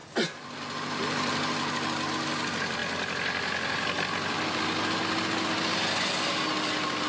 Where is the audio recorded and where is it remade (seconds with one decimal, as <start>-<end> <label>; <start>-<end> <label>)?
0.0-7.1 recorded